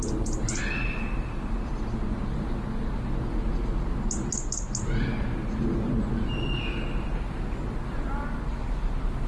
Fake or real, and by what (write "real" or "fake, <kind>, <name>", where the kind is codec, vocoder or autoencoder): real